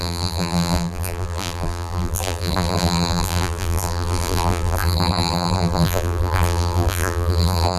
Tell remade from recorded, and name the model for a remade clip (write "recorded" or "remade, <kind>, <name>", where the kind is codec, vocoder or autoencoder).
remade, vocoder, BigVGAN v2